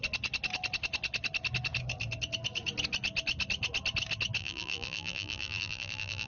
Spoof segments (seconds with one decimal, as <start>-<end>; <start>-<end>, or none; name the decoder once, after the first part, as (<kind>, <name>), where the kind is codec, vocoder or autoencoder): 4.4-6.3 (vocoder, BigVGAN v2)